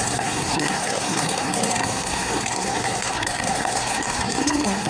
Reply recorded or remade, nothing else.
remade